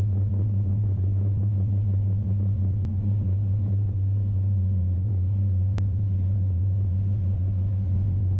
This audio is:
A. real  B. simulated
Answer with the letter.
B